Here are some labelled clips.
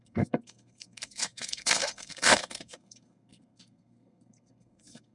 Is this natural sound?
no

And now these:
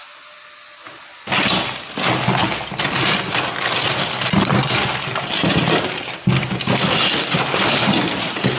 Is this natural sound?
yes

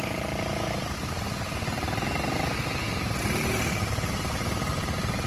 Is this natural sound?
yes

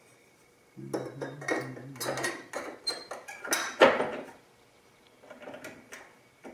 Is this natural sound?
yes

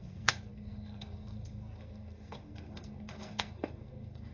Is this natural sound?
no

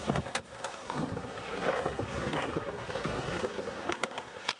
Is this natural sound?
no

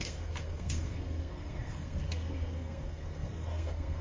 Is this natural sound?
no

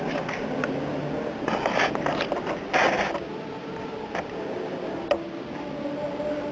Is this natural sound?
yes